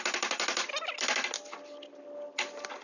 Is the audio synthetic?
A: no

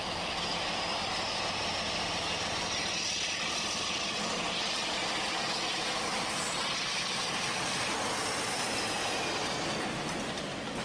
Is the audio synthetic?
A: no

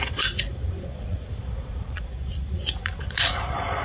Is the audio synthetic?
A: yes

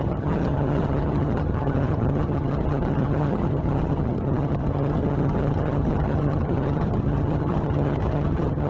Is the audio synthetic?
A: yes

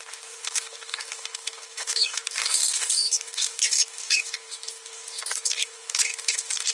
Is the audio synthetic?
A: yes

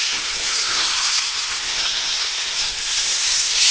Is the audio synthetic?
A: yes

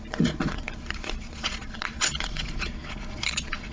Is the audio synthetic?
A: yes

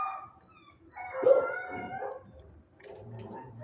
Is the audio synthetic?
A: no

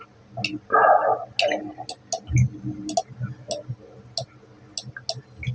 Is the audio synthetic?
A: no